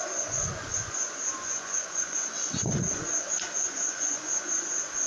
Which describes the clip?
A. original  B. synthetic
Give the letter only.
B